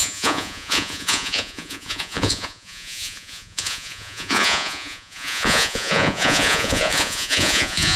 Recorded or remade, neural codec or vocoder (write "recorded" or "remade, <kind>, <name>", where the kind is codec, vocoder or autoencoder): remade, vocoder, Vocos